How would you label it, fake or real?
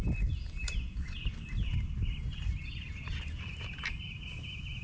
real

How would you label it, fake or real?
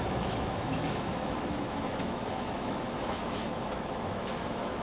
fake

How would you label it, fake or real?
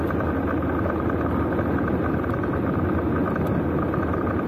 real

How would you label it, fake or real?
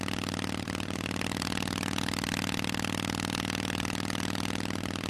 real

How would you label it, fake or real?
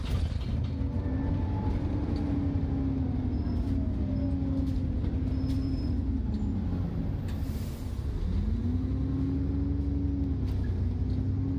real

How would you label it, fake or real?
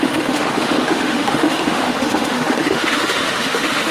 fake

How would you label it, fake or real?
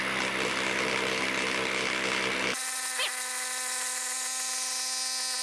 real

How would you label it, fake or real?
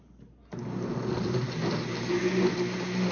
real